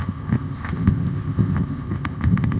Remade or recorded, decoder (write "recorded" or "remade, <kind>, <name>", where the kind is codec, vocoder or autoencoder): remade, codec, ZipCodec